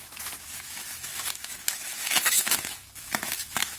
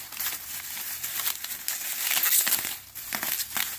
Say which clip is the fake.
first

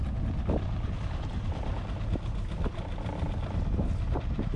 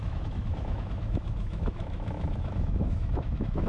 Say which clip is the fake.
second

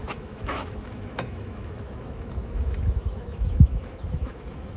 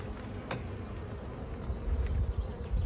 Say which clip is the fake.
first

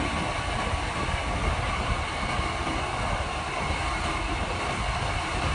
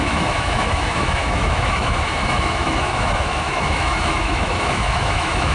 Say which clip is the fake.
second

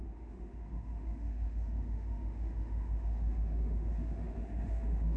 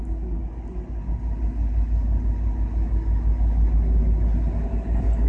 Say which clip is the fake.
first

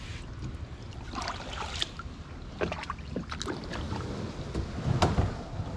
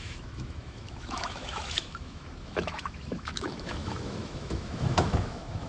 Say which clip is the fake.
second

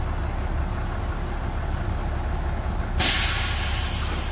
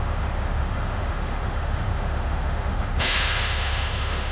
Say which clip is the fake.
second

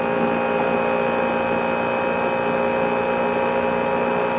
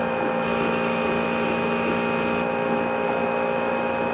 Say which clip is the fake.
second